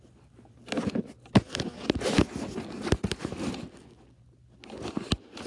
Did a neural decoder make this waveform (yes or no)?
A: no